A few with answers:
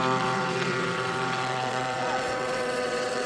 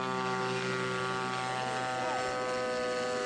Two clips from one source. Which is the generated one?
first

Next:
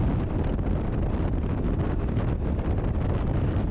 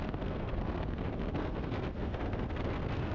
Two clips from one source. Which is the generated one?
second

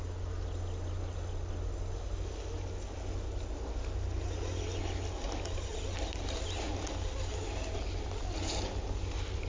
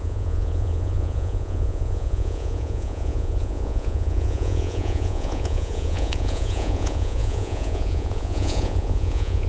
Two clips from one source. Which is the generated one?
second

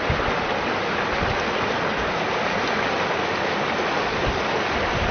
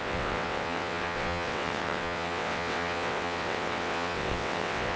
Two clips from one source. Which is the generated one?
second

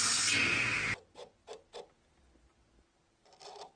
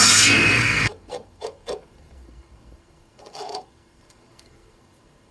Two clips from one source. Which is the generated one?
second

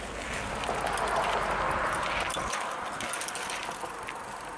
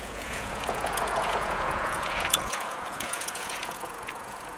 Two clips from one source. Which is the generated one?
second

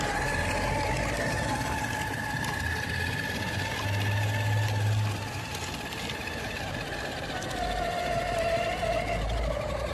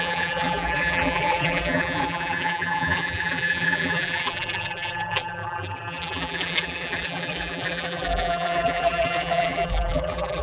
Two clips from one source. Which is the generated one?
second